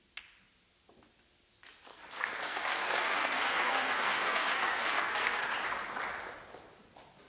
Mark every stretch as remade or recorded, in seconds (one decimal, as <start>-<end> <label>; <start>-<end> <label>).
0.0-1.9 recorded; 1.9-5.5 remade; 5.5-7.3 recorded